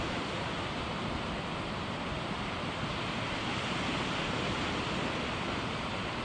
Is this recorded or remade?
recorded